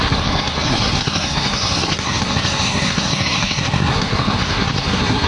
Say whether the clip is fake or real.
fake